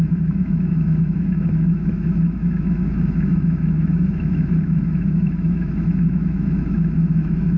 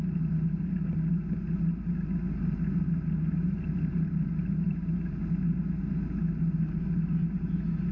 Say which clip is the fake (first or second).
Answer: first